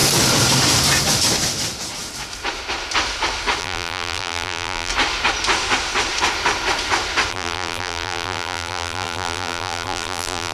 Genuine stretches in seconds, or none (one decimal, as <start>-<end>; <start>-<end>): 0.0-3.6; 4.9-7.3